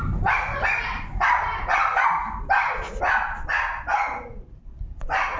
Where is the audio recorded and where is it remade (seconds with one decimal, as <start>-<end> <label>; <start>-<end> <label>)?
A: 0.0-1.8 remade; 1.8-5.0 recorded; 5.0-5.4 remade